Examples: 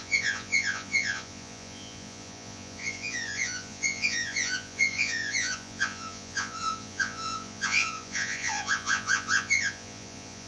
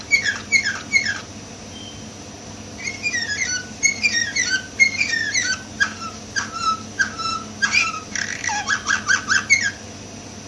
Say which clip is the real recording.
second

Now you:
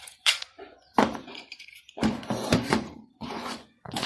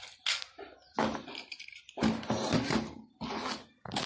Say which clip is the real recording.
second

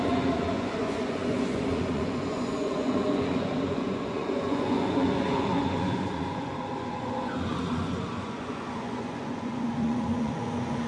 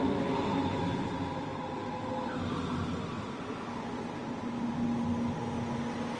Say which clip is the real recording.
second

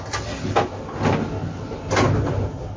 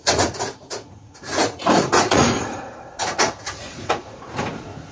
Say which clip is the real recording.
first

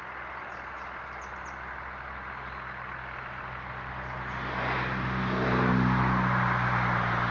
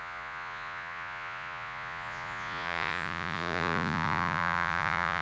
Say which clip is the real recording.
first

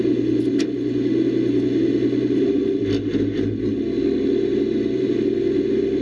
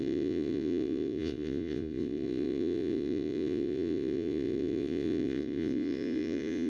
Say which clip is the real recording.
first